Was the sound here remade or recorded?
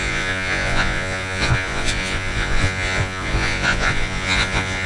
remade